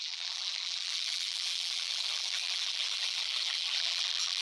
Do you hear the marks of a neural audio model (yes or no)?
yes